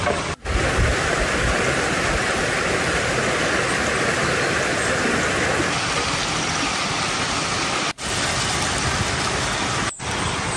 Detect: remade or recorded recorded